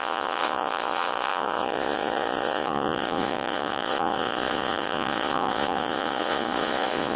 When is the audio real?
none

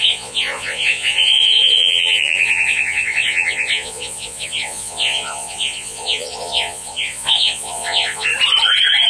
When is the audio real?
8.3-9.1

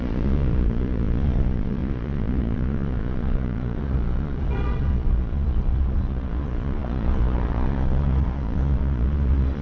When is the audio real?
none

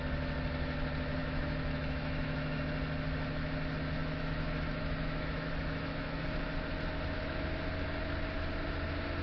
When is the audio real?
0.0-1.2; 2.6-4.0; 6.2-9.2